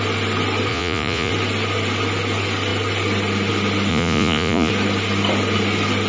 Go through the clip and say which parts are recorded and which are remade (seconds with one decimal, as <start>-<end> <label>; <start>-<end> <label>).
0.0-0.7 recorded; 0.7-1.3 remade; 1.3-3.9 recorded; 3.9-4.7 remade; 4.7-6.1 recorded